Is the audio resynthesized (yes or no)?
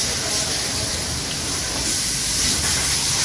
no